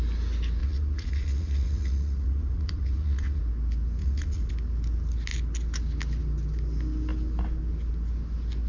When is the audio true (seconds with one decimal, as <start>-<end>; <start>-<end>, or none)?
0.0-0.6; 3.4-4.0; 4.5-8.7